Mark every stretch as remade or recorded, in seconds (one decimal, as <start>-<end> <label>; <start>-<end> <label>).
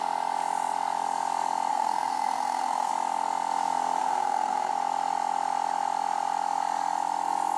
0.0-1.7 recorded; 1.7-2.9 remade; 2.9-4.0 recorded; 4.0-4.7 remade; 4.7-7.6 recorded